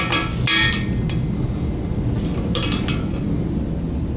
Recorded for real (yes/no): yes